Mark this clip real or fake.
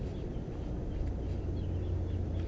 real